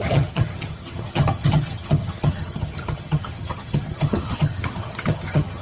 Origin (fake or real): fake